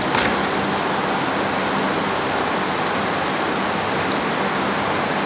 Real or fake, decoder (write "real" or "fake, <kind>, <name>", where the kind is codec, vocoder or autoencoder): real